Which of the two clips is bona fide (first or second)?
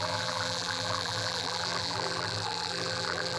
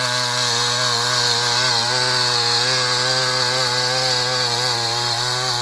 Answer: second